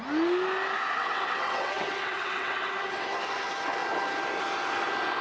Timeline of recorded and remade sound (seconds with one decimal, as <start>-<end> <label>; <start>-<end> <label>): 0.0-0.9 recorded; 0.9-3.1 remade; 3.1-5.2 recorded